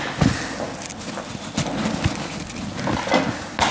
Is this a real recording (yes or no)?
yes